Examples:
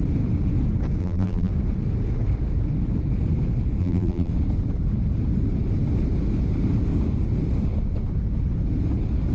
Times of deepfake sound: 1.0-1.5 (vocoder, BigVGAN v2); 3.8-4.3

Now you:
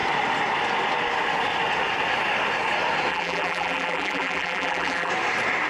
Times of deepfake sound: 3.1-5.1 (vocoder, BigVGAN v2)

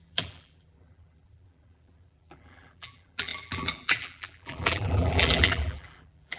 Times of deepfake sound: 0.0-6.4 (vocoder, BigVGAN v2)

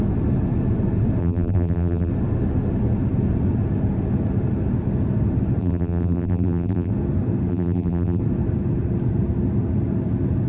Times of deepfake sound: 1.2-2.1 (vocoder, BigVGAN v2); 5.6-6.9; 7.5-8.2